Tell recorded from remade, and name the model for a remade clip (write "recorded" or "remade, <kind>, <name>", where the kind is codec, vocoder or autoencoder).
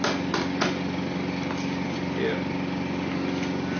recorded